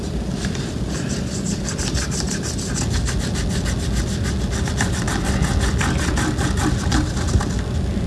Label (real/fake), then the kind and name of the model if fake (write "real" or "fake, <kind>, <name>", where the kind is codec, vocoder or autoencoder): real